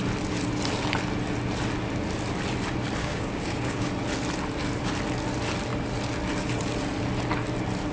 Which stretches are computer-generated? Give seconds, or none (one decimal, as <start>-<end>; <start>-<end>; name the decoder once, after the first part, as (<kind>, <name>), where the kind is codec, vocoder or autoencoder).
3.0-3.9 (codec, DAC)

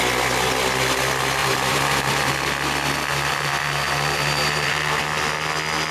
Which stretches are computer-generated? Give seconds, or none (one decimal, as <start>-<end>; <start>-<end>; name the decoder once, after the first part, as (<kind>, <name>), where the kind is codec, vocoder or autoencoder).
1.4-2.3 (vocoder, BigVGAN v2); 3.1-5.0

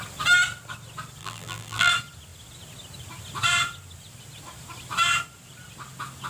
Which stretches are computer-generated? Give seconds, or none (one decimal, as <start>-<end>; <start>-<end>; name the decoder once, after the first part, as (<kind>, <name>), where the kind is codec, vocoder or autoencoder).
1.2-1.9 (vocoder, BigVGAN v2)

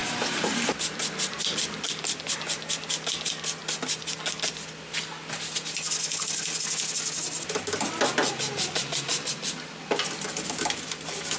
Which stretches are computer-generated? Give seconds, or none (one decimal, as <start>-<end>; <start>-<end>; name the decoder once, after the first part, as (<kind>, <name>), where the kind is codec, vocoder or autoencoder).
none

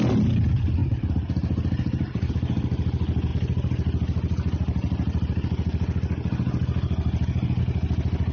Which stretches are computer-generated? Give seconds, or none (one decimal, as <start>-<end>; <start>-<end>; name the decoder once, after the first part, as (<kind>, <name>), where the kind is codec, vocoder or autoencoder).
0.8-2.3 (vocoder, BigVGAN v2)

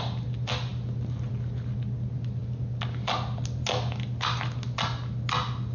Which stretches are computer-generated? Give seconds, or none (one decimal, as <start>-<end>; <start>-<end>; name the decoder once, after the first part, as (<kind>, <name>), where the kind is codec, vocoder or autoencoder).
none

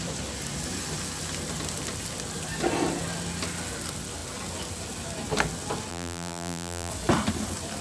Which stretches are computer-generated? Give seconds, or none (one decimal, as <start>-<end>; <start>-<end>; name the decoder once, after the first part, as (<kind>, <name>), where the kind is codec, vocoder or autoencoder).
5.9-6.9 (vocoder, BigVGAN v2)

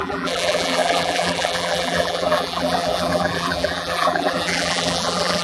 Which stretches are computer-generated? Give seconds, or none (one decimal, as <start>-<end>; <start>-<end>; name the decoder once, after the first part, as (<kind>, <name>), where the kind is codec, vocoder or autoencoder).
0.0-5.4 (vocoder, BigVGAN v2)